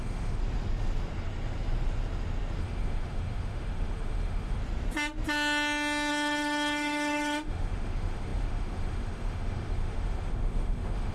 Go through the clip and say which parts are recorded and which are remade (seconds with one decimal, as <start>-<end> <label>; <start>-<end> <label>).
0.0-0.4 remade; 0.4-2.6 recorded; 2.6-4.6 remade; 4.6-6.1 recorded; 6.1-11.1 remade